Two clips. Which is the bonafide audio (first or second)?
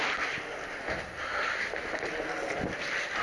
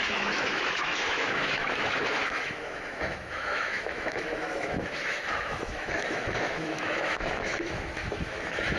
first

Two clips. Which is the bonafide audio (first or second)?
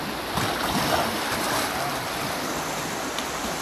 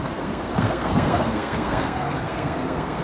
first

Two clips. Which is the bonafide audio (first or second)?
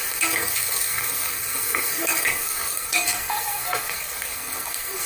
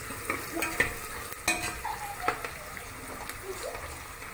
second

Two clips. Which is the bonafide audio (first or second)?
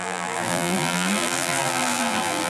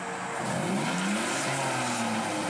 second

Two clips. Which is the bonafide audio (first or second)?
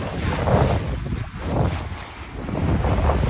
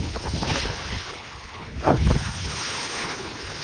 first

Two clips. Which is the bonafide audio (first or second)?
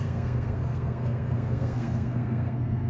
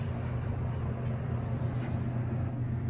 second